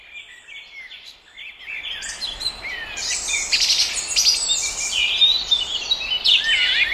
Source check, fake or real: real